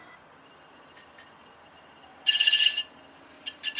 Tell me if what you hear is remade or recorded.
remade